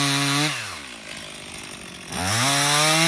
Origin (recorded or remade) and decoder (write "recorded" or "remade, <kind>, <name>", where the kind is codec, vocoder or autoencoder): recorded